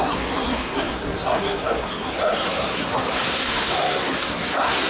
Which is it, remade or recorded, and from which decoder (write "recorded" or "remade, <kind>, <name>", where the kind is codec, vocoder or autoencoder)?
remade, codec, SNAC